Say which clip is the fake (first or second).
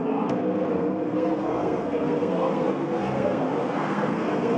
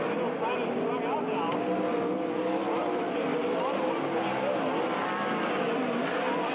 first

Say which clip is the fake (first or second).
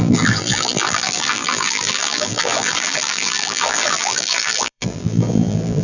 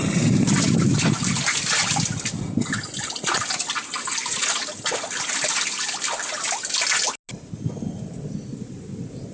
first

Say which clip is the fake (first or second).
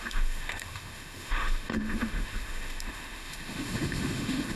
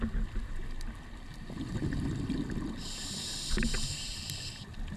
first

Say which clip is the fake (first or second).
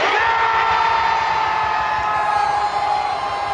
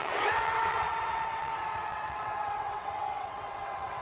second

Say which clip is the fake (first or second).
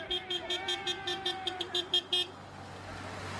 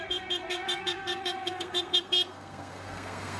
second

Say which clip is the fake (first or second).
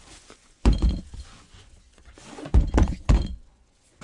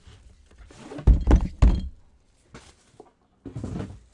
first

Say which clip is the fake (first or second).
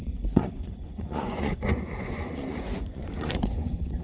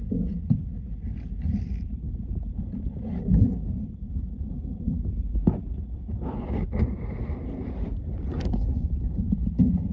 first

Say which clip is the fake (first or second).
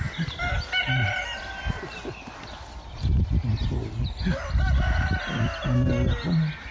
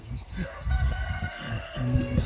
second